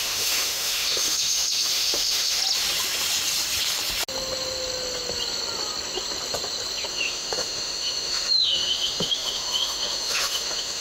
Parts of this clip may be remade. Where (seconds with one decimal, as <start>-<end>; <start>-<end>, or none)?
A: 0.0-2.4; 6.9-10.8